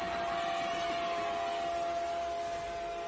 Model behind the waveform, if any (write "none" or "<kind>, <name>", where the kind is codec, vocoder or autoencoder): none